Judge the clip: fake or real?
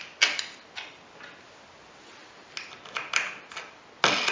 real